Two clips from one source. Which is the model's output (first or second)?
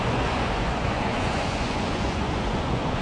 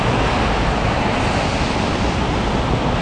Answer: first